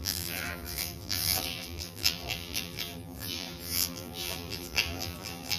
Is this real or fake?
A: fake